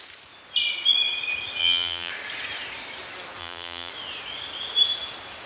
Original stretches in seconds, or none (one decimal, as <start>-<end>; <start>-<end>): 0.0-1.6; 2.1-3.4; 3.9-5.5

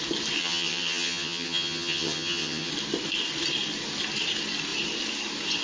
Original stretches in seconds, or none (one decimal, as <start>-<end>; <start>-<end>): 0.0-0.4; 2.7-5.6

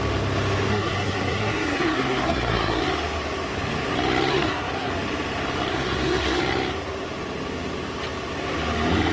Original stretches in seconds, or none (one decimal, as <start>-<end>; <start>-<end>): 0.0-0.7; 2.8-4.3; 4.9-5.7; 6.4-9.1

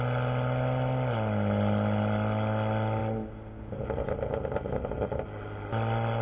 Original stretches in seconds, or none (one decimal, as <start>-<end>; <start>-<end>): 0.0-6.2

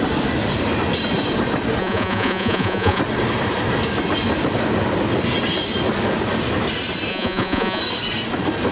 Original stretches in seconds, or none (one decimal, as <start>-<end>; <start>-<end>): 0.0-1.8; 3.0-7.1; 7.8-8.7